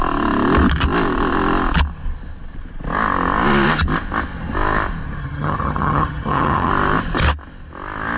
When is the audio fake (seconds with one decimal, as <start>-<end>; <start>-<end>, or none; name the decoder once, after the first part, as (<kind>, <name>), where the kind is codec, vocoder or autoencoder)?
5.2-6.7 (vocoder, HiFi-GAN)